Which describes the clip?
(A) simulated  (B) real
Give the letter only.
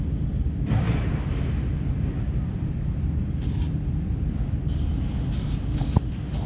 B